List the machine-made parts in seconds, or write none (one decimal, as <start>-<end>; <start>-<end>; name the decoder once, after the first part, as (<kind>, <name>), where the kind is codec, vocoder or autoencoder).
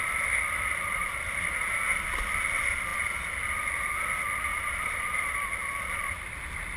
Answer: 4.5-5.4 (vocoder, BigVGAN v2)